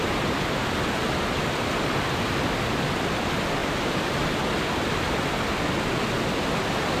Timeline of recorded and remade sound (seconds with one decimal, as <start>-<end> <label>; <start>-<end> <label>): 0.0-7.0 recorded